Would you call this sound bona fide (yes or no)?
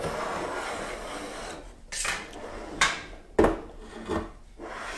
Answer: yes